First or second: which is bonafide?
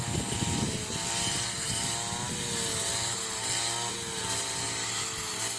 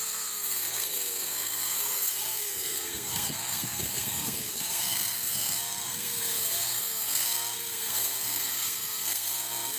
first